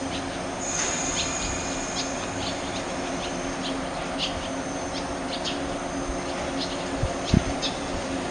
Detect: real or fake real